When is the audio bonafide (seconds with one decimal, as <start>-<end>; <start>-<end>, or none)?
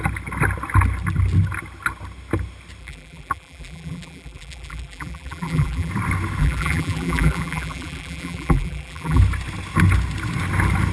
0.0-2.8; 5.9-6.4; 9.2-10.9